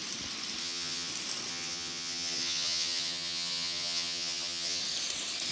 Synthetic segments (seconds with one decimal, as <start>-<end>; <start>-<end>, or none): 0.6-1.1; 1.5-4.8